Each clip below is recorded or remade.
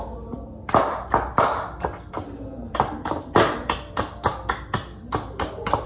recorded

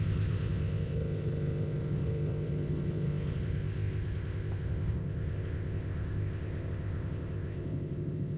remade